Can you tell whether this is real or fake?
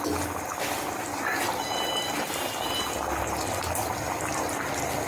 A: real